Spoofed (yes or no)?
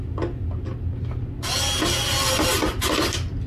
no